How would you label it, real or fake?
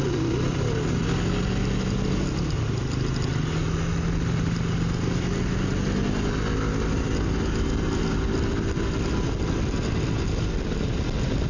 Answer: real